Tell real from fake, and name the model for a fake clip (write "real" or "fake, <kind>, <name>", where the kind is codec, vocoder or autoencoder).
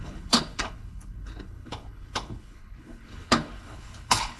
fake, codec, HILCodec